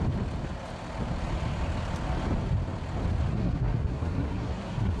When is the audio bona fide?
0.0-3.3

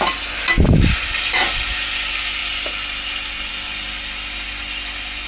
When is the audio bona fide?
0.0-5.3

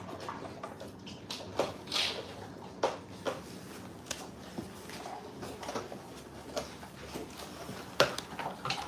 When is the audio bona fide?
0.0-8.9

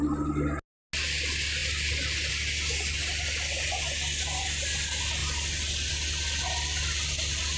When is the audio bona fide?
0.0-7.6

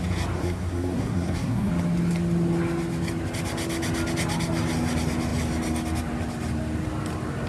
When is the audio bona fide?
0.0-0.4; 1.7-7.5